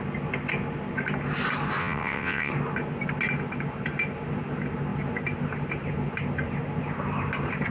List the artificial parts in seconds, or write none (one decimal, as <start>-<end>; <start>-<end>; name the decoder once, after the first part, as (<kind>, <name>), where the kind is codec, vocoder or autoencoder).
1.8-2.5 (vocoder, WaveNeXt)